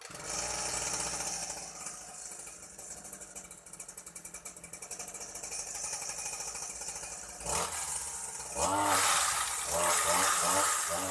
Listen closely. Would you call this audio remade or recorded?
recorded